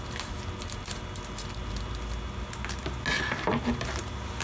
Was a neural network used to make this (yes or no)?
no